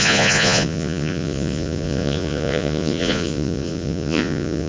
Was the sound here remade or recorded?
remade